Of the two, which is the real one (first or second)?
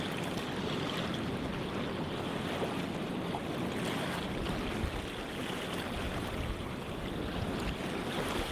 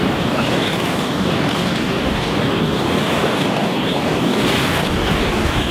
first